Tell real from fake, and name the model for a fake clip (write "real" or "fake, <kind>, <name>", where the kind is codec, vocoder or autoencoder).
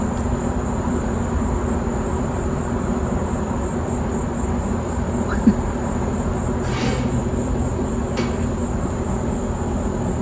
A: real